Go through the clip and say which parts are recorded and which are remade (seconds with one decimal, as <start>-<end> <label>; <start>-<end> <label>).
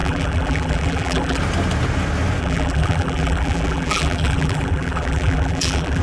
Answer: 0.0-1.4 remade; 1.4-2.4 recorded; 2.4-6.0 remade